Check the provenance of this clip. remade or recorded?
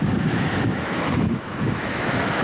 remade